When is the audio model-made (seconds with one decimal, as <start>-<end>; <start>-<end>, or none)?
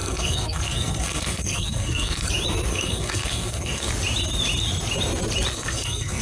0.0-2.3; 2.7-3.9; 5.5-6.2